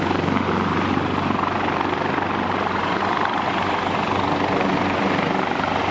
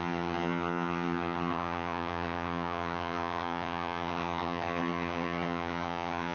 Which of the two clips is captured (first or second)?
first